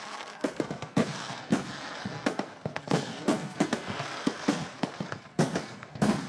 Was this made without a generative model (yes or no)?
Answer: no